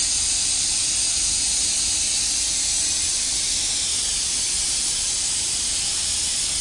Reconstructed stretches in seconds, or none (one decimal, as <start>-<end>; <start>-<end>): 3.1-5.6